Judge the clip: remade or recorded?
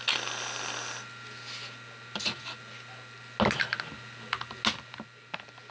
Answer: recorded